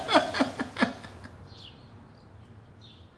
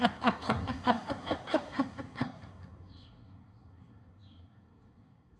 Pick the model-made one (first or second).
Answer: second